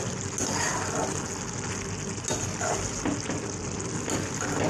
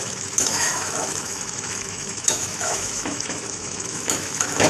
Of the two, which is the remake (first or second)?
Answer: second